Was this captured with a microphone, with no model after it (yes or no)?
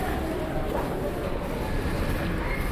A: yes